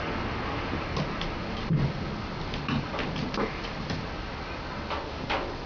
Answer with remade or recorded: recorded